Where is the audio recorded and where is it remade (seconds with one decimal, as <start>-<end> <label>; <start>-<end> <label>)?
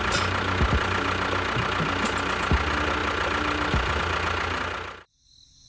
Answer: 0.0-5.7 recorded